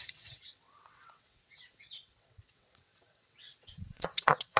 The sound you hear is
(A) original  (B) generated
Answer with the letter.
B